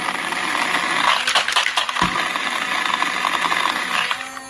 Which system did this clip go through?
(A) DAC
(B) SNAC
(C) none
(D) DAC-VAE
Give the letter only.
C